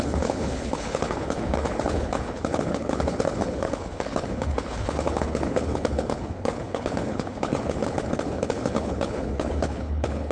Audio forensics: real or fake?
fake